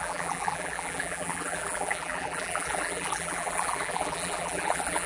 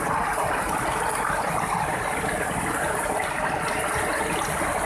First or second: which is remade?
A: first